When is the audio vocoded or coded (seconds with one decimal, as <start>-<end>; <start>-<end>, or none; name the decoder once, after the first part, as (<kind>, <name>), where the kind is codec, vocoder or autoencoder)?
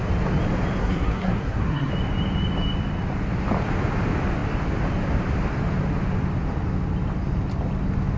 0.8-1.9 (codec, SNAC)